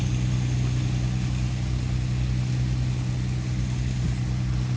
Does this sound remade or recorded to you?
recorded